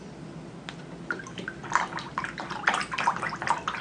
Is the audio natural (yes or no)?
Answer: yes